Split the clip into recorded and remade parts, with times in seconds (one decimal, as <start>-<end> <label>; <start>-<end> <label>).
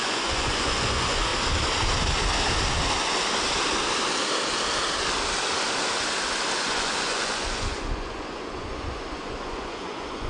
0.0-1.3 remade; 1.3-6.6 recorded; 6.6-10.3 remade